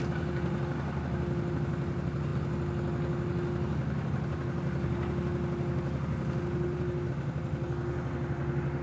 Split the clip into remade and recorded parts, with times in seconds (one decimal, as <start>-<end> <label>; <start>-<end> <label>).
0.0-8.8 recorded